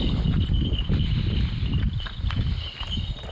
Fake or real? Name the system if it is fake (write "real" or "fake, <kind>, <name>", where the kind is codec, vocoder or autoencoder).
real